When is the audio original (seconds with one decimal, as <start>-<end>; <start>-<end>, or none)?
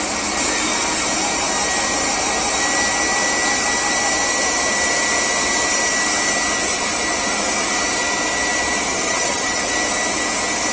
0.0-8.9; 9.6-10.7